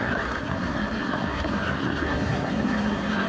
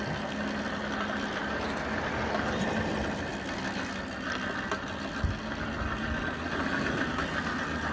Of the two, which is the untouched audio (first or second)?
second